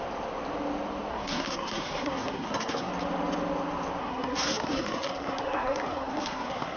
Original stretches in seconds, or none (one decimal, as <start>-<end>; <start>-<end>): 0.0-1.1; 2.9-4.0

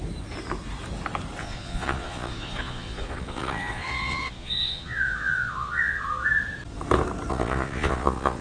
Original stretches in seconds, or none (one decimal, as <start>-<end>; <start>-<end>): 0.0-1.4; 6.0-7.3

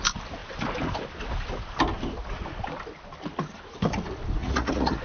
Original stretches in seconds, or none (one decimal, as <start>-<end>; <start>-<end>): 0.0-4.4

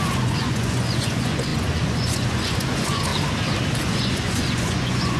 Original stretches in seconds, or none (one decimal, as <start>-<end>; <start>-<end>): 3.1-3.8

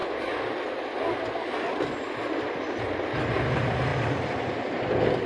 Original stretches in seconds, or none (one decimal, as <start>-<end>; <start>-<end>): 0.0-5.3